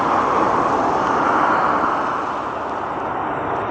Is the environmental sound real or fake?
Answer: real